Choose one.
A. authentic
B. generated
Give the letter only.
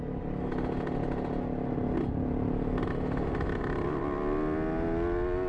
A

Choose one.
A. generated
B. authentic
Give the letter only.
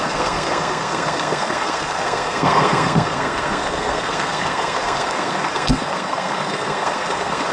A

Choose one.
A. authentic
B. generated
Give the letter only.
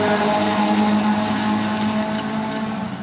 A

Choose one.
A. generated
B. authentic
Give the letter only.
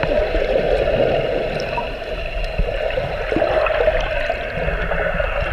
B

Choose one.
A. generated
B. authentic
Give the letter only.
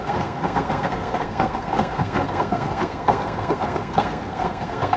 A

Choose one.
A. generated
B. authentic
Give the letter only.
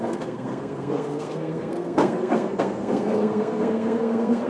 A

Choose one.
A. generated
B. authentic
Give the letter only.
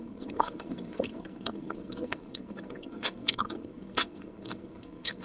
A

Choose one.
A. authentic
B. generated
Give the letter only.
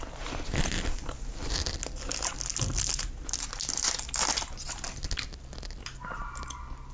A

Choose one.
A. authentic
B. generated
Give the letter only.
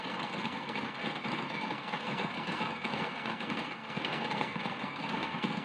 B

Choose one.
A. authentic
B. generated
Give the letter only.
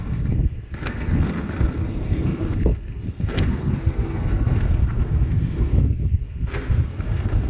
B